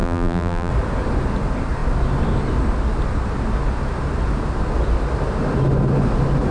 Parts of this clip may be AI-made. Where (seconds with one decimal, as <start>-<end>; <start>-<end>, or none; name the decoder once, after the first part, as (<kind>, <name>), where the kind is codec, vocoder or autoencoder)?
0.0-0.7 (vocoder, BigVGAN v2)